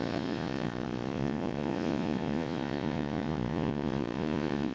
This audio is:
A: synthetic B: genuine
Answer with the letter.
A